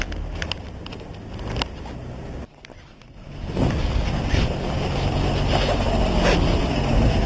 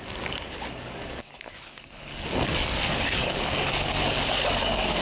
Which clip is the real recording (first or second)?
first